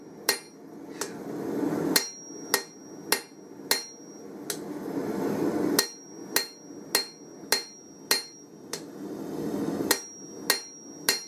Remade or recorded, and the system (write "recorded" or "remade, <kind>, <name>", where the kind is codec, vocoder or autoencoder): recorded